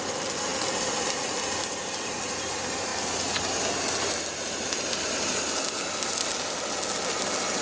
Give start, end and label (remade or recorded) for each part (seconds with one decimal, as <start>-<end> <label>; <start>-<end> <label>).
0.0-7.6 recorded